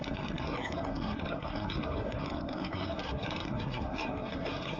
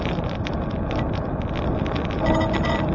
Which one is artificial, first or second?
first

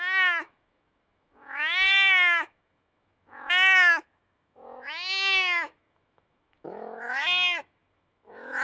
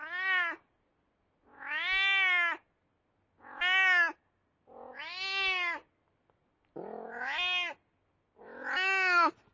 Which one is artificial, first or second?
first